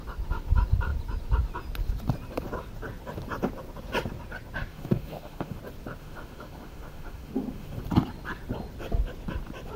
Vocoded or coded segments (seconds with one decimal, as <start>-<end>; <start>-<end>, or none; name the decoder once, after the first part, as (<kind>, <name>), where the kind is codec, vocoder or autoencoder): 4.7-5.6 (autoencoder, DAC-VAE); 6.0-7.8